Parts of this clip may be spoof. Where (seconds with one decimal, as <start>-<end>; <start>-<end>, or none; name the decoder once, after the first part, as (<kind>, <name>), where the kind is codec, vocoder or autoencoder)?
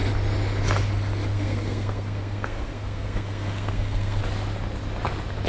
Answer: 1.3-4.2 (codec, SNAC)